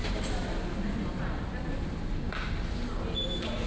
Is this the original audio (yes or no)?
yes